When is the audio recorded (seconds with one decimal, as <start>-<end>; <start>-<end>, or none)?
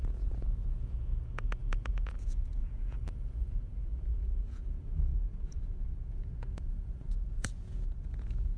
none